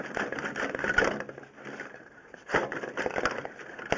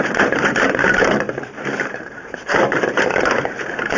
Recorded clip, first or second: first